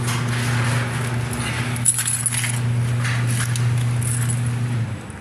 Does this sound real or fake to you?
real